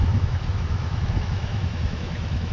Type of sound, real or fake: fake